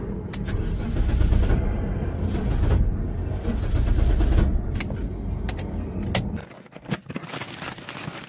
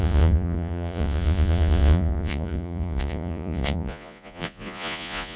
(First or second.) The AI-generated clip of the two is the second